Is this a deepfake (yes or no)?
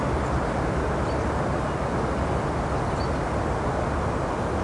no